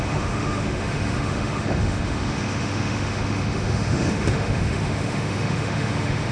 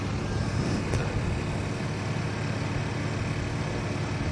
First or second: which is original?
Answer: second